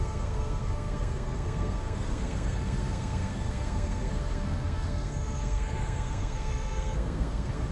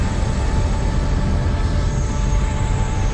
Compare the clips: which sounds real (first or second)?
second